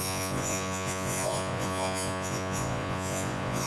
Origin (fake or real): fake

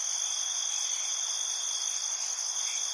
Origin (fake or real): real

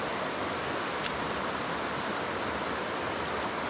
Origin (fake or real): real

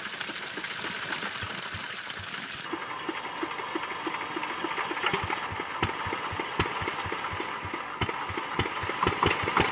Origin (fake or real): real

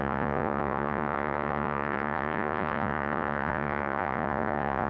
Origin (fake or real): fake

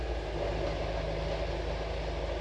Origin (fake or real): real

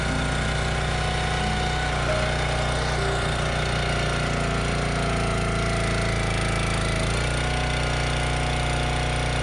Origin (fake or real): real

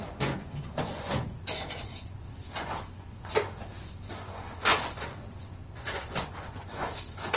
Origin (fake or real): fake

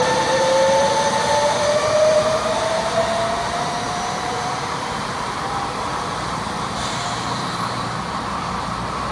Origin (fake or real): fake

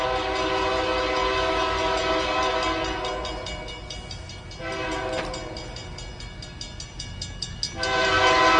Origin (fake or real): real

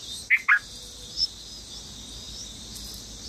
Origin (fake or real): real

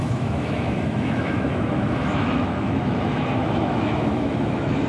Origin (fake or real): fake